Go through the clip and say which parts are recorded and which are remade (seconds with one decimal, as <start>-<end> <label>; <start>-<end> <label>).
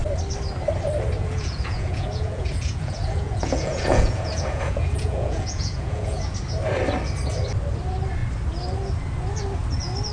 0.0-1.2 recorded; 1.2-6.2 remade; 6.2-10.1 recorded